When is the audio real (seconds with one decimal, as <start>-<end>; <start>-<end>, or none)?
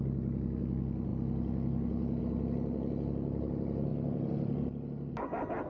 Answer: 0.0-5.7